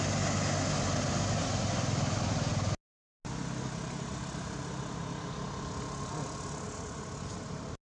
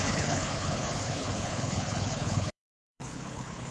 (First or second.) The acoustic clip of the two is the first